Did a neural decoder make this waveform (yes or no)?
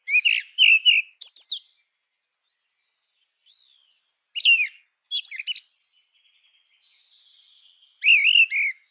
no